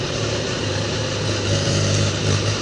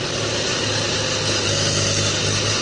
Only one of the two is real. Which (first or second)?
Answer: second